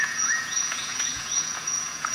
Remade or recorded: remade